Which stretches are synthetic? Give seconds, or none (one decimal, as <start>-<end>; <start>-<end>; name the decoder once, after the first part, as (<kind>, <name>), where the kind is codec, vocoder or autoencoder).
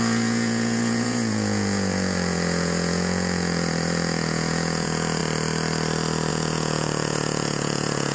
0.0-5.2 (vocoder, Vocos); 6.3-8.1